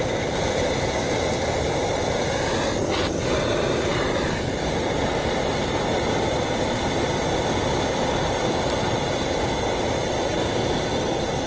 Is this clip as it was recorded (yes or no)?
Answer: yes